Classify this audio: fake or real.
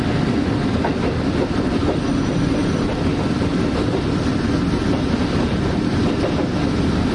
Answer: real